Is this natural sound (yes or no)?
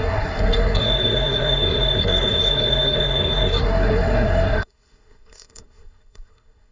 no